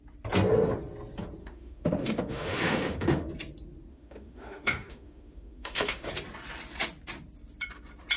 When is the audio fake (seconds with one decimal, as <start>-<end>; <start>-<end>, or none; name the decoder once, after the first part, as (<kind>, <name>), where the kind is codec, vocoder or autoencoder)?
1.4-3.3 (autoencoder, DAC-VAE); 3.9-6.1